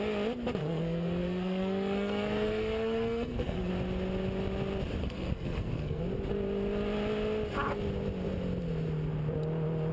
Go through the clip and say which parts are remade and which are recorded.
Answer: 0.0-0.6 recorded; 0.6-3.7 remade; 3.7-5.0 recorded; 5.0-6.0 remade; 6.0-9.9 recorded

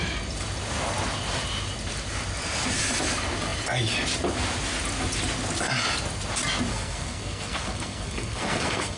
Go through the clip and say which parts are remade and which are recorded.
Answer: 0.0-6.7 recorded; 6.7-9.0 remade

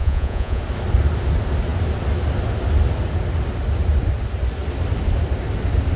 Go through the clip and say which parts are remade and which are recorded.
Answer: 0.0-0.6 remade; 0.6-6.0 recorded

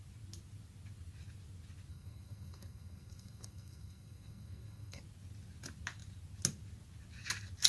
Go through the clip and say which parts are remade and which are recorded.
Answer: 0.0-1.9 recorded; 1.9-5.0 remade; 5.0-7.7 recorded

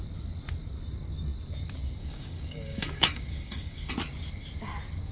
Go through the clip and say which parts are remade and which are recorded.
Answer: 0.0-2.0 recorded; 2.0-3.9 remade; 3.9-5.1 recorded

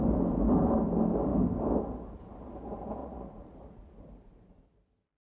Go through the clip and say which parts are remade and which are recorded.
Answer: 0.0-3.0 recorded; 3.0-4.6 remade; 4.6-5.3 recorded

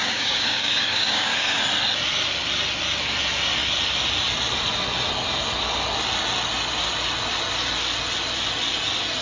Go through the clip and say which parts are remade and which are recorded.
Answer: 0.0-1.6 remade; 1.6-9.2 recorded